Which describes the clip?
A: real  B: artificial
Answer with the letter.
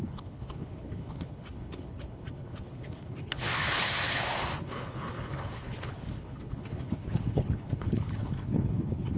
B